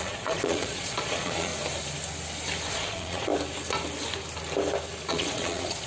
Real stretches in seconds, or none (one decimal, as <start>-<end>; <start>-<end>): 1.5-2.7; 3.3-5.1